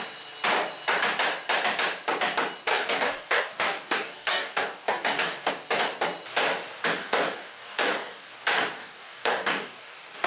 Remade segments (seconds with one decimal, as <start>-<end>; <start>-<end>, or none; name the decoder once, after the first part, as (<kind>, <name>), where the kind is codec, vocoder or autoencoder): 2.7-5.5 (codec, DAC); 7.0-8.3; 8.8-10.3

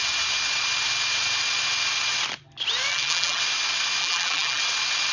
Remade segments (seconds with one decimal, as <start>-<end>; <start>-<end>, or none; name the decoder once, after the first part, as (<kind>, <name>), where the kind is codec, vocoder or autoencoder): 2.9-3.4 (vocoder, BigVGAN v2); 4.0-4.6

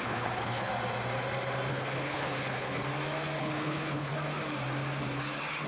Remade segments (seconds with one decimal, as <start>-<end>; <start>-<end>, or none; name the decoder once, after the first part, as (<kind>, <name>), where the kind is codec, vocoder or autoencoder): 0.0-0.7 (codec, HILCodec); 1.7-2.8; 3.4-4.1

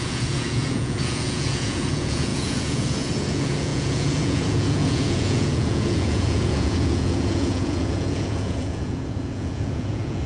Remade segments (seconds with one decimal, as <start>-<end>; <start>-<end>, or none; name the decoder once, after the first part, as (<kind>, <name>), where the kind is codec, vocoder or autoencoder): 0.0-10.3 (vocoder, Vocos)

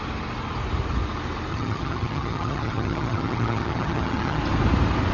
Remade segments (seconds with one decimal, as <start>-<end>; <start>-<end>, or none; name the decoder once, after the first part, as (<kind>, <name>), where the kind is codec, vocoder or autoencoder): 1.5-4.4 (vocoder, HiFi-GAN)

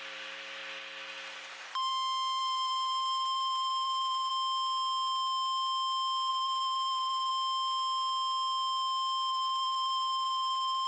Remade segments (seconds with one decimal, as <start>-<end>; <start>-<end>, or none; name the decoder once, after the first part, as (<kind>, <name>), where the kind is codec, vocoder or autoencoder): 0.0-0.6 (vocoder, BigVGAN v2); 1.3-1.9; 2.4-4.3; 6.3-7.3; 9.3-10.9